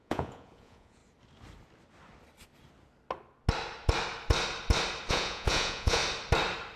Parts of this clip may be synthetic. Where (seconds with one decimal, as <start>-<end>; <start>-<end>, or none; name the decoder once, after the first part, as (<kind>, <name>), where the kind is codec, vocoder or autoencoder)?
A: 0.0-1.0 (vocoder, Vocos); 5.1-6.0